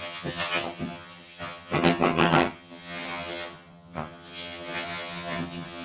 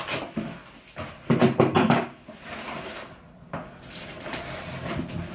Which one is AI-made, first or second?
first